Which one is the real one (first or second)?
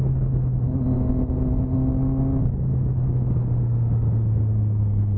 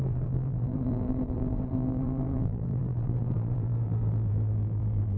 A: first